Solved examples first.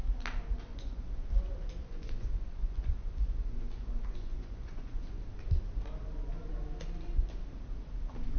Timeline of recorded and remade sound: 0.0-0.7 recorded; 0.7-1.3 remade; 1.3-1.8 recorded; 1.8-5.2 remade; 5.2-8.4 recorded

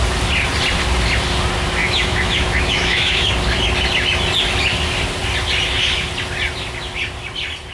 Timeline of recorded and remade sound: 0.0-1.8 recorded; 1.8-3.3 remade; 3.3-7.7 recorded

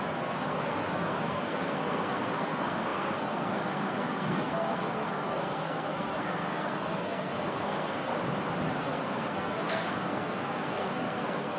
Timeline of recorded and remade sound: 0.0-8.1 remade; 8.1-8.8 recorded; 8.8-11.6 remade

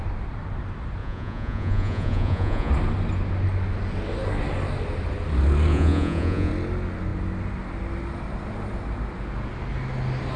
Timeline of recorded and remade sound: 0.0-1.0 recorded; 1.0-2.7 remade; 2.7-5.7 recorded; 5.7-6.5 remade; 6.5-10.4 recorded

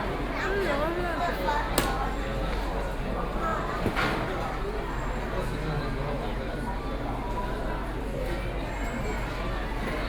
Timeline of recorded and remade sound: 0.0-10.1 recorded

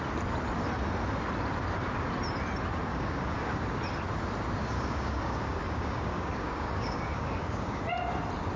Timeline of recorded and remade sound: 0.0-2.9 recorded; 2.9-3.6 remade; 3.6-4.6 recorded; 4.6-7.8 remade; 7.8-8.6 recorded

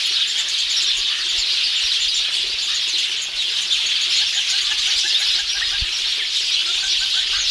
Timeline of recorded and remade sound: 0.0-6.6 recorded; 6.6-7.5 remade

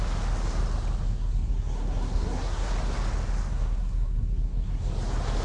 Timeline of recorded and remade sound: 0.0-1.0 recorded; 1.0-2.7 remade; 2.7-3.5 recorded; 3.5-4.9 remade; 4.9-5.4 recorded